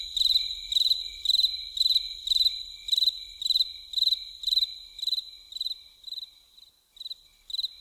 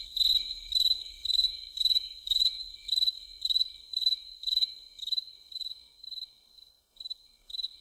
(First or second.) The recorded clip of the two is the first